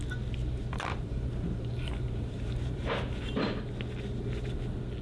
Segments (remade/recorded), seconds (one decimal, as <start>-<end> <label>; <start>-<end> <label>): 0.0-0.4 recorded; 0.4-3.4 remade; 3.4-5.0 recorded